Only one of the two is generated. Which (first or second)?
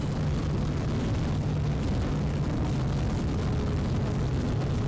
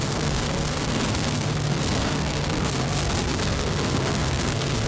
second